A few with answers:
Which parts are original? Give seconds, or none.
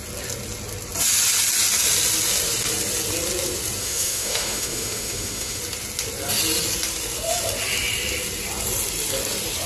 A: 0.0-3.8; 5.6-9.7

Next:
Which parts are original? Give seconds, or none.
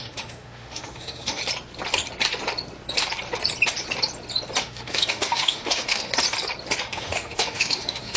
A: 1.4-4.6; 6.1-6.8